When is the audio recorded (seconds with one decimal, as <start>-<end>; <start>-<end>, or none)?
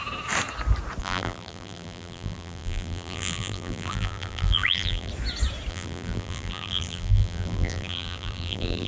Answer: 0.0-1.0; 5.1-5.7